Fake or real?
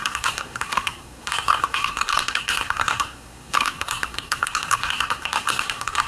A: fake